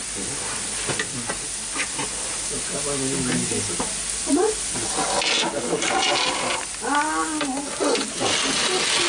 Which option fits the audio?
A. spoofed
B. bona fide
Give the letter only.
B